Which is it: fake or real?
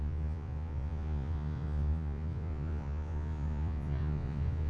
fake